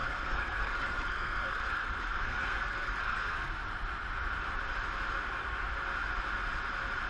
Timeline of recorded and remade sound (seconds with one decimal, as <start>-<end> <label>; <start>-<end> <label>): 0.0-3.6 remade; 3.6-7.1 recorded